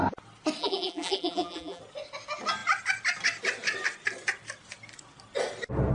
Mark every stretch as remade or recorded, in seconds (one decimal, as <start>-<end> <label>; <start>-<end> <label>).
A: 0.0-0.6 recorded; 0.6-1.8 remade; 1.8-5.9 recorded